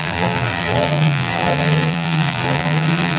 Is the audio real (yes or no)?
no